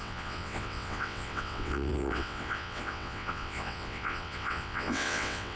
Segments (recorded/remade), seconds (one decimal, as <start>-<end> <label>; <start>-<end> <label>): 0.0-5.6 remade